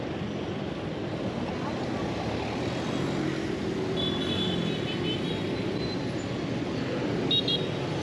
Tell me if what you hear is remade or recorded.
recorded